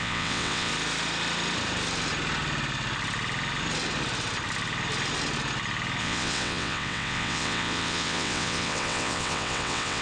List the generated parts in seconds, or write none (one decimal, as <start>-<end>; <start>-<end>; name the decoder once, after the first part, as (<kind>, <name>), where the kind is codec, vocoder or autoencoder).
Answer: 0.0-0.7 (vocoder, WaveNeXt); 6.0-10.0